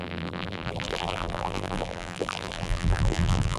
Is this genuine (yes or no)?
no